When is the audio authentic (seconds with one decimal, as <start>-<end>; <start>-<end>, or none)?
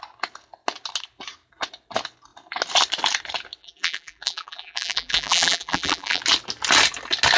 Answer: 0.0-3.6; 6.2-7.4